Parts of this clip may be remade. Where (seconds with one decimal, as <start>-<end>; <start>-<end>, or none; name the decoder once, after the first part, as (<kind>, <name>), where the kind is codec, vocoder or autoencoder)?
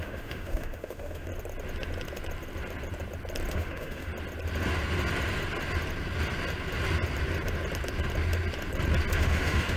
0.0-1.3 (autoencoder, DAC-VAE); 3.5-4.1; 9.1-9.8